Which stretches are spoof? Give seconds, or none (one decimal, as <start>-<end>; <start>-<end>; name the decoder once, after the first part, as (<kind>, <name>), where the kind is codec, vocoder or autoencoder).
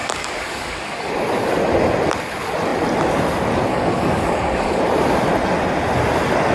0.0-1.1 (codec, DAC); 3.7-4.8